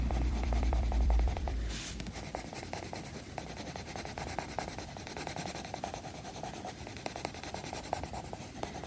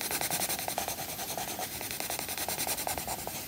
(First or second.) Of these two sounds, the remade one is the first